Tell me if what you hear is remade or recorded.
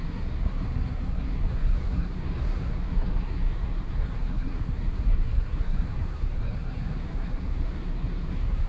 remade